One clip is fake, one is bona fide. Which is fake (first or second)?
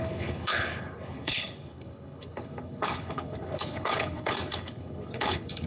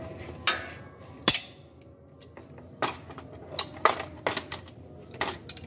first